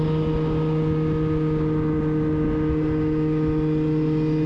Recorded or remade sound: recorded